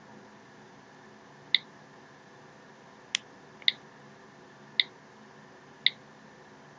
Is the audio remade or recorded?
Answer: recorded